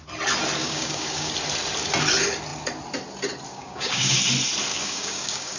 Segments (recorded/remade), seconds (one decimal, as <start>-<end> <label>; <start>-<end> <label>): 0.0-0.6 recorded; 0.6-1.3 remade; 1.3-3.5 recorded; 3.5-4.2 remade; 4.2-4.7 recorded; 4.7-5.6 remade